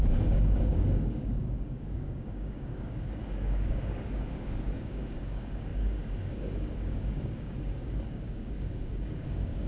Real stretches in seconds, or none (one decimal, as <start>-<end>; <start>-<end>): none